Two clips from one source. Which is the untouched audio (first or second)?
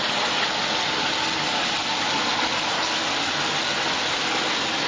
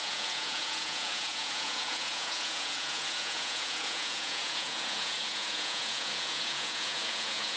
first